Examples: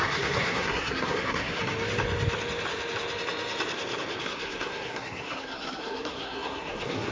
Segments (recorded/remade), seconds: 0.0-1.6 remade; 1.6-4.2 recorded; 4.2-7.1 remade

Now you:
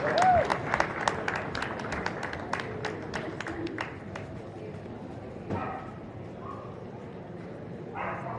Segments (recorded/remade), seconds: 0.0-8.4 recorded

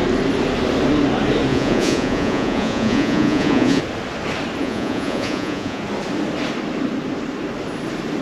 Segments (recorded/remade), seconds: 0.0-1.5 recorded; 1.5-3.8 remade; 3.8-4.6 recorded; 4.6-5.8 remade; 5.8-8.2 recorded

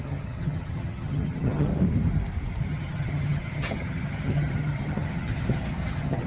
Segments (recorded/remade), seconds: 0.0-1.7 remade; 1.7-2.7 recorded; 2.7-6.3 remade

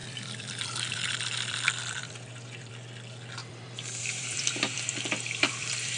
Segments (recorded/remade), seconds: 0.0-6.0 remade

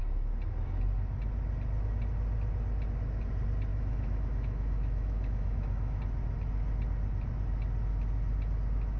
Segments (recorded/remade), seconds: 0.0-3.7 recorded; 3.7-6.0 remade; 6.0-9.0 recorded